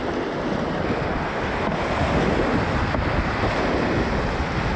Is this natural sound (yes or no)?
yes